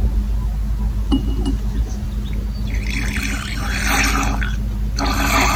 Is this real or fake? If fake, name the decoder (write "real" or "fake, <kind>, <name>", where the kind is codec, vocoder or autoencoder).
real